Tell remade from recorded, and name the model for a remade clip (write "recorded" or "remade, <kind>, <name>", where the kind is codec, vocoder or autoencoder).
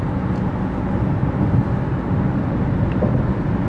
recorded